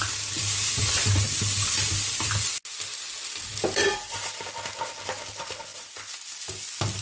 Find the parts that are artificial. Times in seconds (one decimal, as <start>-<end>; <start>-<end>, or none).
none